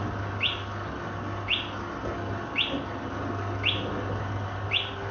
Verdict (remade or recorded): recorded